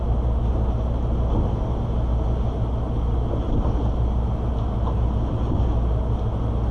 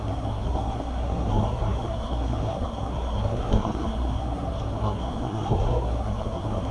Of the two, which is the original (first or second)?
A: first